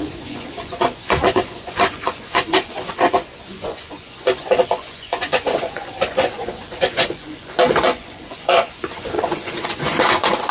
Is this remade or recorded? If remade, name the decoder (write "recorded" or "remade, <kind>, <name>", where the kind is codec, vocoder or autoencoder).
remade, vocoder, Vocos